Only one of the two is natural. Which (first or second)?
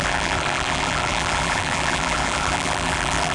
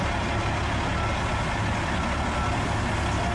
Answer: second